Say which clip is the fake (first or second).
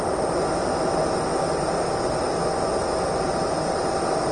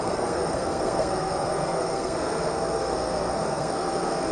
second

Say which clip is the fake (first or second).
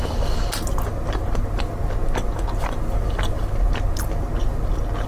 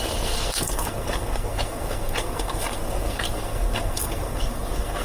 second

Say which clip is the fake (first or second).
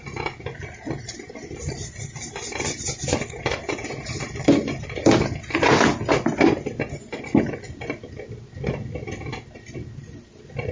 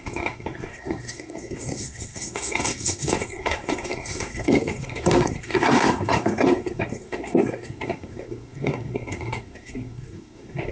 second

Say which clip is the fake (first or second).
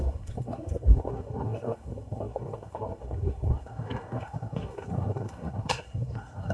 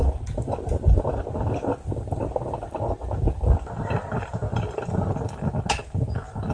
first